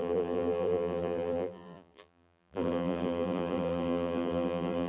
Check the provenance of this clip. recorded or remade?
remade